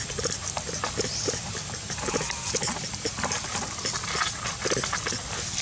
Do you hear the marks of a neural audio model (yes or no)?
no